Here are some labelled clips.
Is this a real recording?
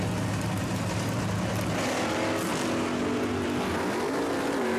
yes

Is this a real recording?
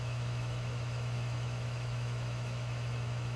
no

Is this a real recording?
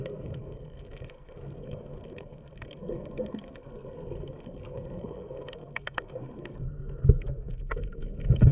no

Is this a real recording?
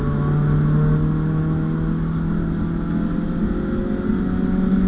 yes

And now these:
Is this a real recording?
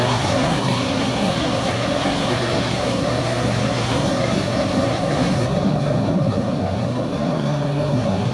no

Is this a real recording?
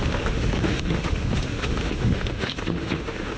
no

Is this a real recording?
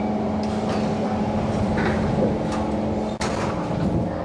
yes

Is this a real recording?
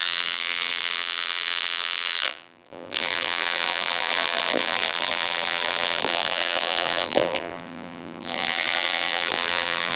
no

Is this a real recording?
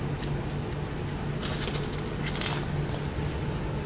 yes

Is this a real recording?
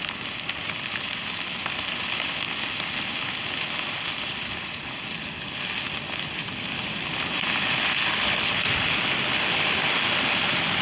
yes